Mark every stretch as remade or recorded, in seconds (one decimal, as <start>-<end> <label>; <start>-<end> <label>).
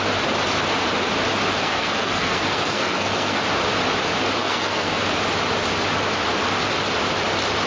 0.0-1.6 recorded; 1.6-3.4 remade; 3.4-4.4 recorded; 4.4-5.0 remade; 5.0-7.7 recorded